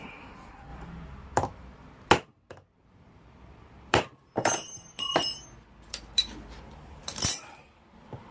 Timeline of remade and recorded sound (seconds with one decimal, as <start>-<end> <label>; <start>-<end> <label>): 0.0-8.3 remade